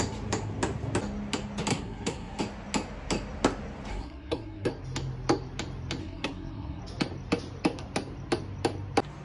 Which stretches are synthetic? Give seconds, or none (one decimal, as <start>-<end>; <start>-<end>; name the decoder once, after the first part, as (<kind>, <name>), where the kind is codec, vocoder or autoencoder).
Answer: 1.7-2.4 (codec, SNAC); 3.9-4.7; 6.0-6.8

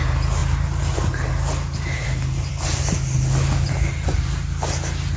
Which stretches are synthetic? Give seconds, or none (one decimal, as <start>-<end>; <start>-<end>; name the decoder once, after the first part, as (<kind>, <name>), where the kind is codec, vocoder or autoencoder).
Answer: none

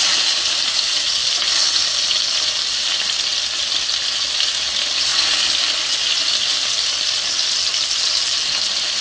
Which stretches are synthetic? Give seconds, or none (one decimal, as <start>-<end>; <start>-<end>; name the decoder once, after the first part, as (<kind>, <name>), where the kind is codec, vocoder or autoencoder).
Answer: none

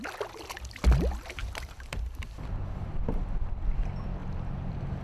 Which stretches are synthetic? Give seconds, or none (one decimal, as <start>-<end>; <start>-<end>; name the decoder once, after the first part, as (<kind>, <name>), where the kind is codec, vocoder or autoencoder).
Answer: 1.4-3.2 (vocoder, BigVGAN v2); 4.2-5.0

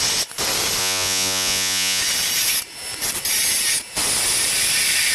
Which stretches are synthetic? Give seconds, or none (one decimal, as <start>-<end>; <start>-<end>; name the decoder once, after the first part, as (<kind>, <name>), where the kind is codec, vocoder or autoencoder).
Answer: 0.8-2.0 (vocoder, Vocos)

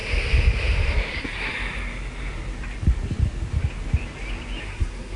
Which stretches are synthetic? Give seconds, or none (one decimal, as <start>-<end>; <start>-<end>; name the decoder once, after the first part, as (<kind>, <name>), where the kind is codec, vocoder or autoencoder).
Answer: 1.1-1.5 (codec, SNAC); 4.6-5.2

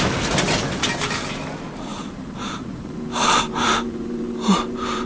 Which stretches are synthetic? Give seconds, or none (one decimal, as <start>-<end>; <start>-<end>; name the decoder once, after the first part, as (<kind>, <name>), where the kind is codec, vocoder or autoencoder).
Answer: 1.9-5.1 (vocoder, BigVGAN v2)

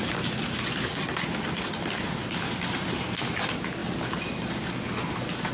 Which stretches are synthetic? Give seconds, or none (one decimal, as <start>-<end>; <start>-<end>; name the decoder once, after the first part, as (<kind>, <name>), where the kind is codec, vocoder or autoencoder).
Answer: none